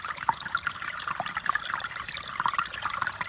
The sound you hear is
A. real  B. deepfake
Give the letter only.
A